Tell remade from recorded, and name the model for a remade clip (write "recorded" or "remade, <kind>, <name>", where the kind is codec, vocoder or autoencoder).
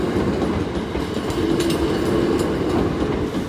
recorded